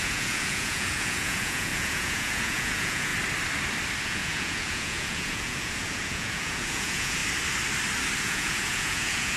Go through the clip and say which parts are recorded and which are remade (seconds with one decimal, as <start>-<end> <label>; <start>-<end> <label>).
0.0-3.1 remade; 3.1-4.0 recorded; 4.0-7.2 remade; 7.2-8.2 recorded; 8.2-9.4 remade

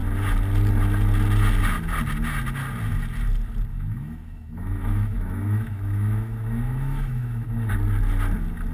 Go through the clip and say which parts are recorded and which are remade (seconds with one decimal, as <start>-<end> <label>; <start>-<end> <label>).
0.0-3.7 recorded; 3.7-7.7 remade; 7.7-8.7 recorded

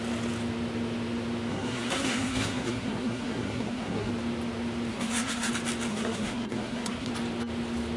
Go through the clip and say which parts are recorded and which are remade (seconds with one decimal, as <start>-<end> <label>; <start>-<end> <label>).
0.0-1.5 recorded; 1.5-4.1 remade; 4.1-4.9 recorded; 4.9-5.5 remade; 5.5-5.9 recorded; 5.9-7.1 remade; 7.1-8.0 recorded

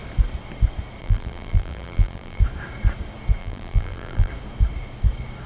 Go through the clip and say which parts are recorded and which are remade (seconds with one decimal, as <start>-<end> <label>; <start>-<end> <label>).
0.0-1.0 recorded; 1.0-2.4 remade; 2.4-3.4 recorded; 3.4-4.3 remade; 4.3-5.5 recorded

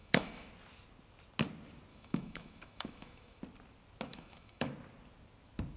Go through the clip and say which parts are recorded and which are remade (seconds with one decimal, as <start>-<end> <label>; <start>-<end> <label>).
0.0-0.5 remade; 0.5-1.9 recorded; 1.9-3.4 remade; 3.4-4.1 recorded; 4.1-4.7 remade; 4.7-5.8 recorded

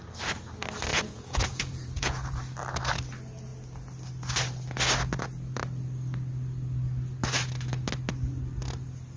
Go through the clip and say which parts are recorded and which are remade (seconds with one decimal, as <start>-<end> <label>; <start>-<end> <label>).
0.0-0.9 recorded; 0.9-2.4 remade; 2.4-9.2 recorded